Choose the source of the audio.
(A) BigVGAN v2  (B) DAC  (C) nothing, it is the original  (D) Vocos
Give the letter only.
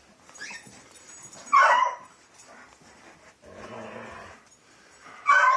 C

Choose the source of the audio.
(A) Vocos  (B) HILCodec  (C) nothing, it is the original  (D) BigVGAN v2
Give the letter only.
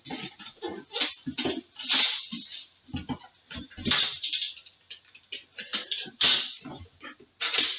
C